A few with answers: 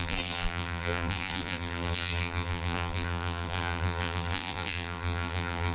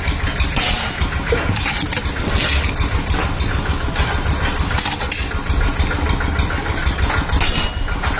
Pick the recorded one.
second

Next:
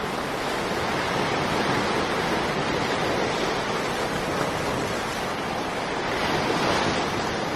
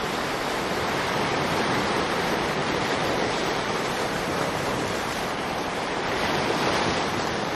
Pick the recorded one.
first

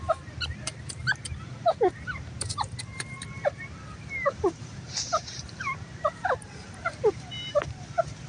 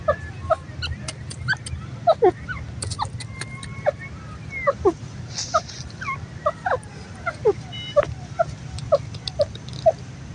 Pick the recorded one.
second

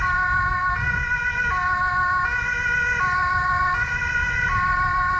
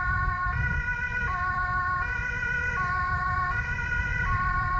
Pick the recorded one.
first